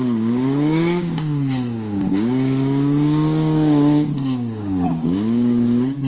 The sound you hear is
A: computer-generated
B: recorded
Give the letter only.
A